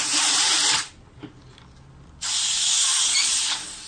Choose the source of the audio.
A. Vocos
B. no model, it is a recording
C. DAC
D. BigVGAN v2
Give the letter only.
D